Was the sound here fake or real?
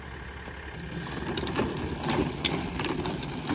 real